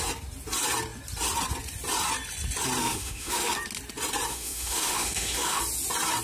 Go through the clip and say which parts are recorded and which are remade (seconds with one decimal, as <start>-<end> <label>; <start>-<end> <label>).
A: 0.0-2.8 recorded; 2.8-3.5 remade; 3.5-4.3 recorded; 4.3-5.6 remade; 5.6-6.2 recorded